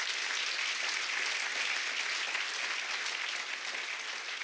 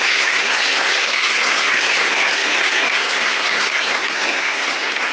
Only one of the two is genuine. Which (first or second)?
first